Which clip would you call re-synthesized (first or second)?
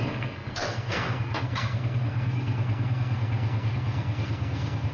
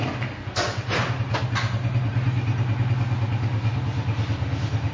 first